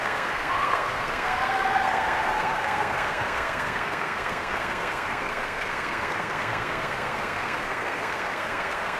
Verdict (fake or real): fake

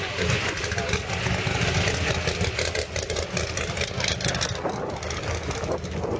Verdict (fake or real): real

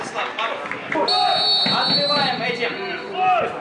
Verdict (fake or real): real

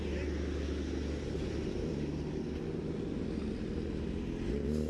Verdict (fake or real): real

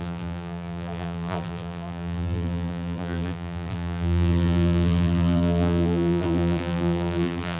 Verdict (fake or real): fake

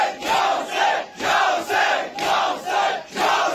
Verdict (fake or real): real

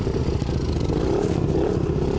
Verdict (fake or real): real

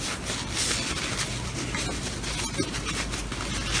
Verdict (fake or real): real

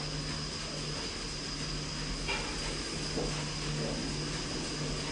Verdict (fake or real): real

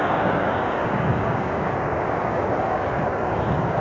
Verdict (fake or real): fake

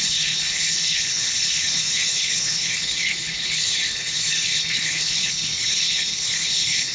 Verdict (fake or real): fake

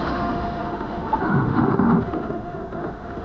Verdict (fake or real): fake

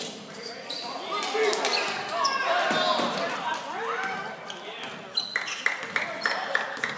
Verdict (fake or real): real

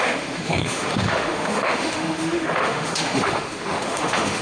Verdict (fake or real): fake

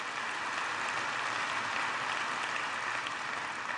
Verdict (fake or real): real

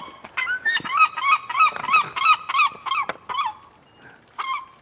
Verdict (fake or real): real